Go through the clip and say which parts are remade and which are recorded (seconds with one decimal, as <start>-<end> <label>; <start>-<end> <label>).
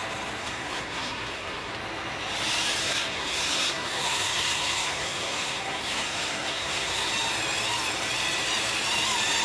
0.0-0.4 recorded; 0.4-1.7 remade; 1.7-2.8 recorded; 2.8-7.1 remade; 7.1-9.4 recorded